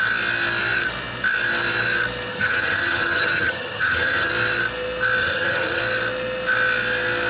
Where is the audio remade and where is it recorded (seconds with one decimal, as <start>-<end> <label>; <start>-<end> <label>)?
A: 0.0-2.3 recorded; 2.3-4.3 remade; 4.3-5.2 recorded; 5.2-5.8 remade; 5.8-7.3 recorded